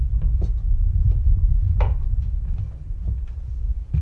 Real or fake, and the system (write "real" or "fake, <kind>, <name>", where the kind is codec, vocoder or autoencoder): real